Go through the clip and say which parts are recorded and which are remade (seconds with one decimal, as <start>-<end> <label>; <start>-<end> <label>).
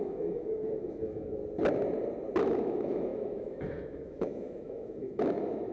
0.0-1.4 remade; 1.4-2.4 recorded; 2.4-5.7 remade